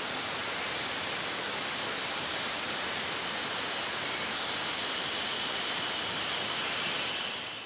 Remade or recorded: remade